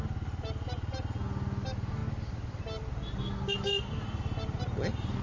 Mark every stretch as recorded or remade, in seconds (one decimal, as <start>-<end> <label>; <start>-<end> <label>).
0.0-5.2 recorded